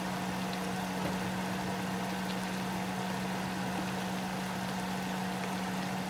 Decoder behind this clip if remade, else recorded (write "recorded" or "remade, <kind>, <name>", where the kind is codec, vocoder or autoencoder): recorded